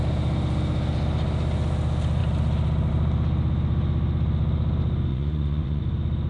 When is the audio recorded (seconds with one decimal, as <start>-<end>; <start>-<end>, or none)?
0.0-5.1; 5.8-6.3